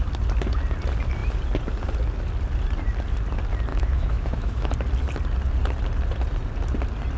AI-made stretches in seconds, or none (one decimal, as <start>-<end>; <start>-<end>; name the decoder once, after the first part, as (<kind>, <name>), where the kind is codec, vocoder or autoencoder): 3.7-4.7 (autoencoder, DAC-VAE)